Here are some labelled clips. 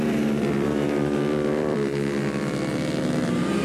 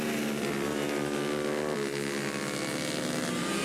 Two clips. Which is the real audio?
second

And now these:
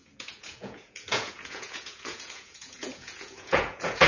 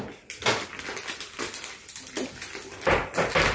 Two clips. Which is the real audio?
second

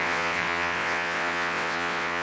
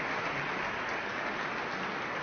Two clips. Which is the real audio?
second